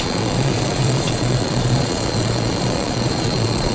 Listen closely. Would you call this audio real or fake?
fake